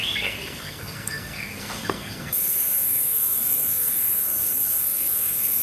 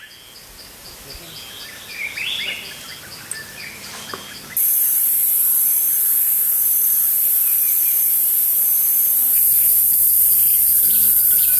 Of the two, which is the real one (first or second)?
second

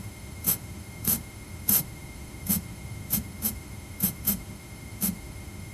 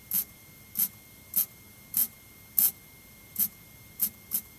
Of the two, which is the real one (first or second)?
second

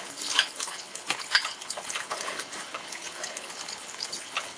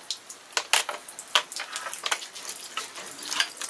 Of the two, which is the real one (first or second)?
second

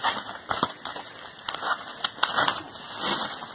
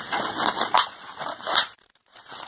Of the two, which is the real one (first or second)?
first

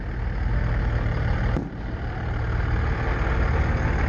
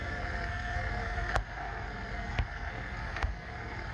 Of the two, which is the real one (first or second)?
first